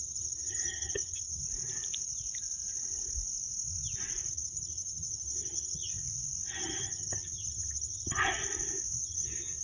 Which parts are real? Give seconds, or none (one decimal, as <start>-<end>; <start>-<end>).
1.4-4.3; 5.9-6.5; 8.4-9.0